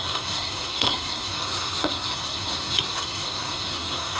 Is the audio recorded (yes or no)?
no